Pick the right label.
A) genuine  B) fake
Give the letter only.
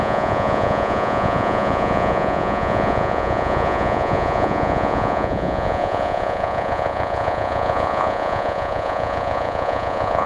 B